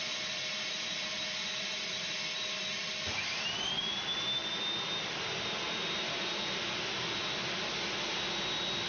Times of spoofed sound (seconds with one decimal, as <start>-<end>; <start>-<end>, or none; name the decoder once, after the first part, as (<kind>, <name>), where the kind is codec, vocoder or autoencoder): none